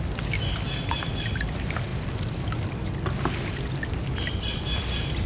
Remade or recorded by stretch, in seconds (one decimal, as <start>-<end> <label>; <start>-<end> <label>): 0.0-5.3 recorded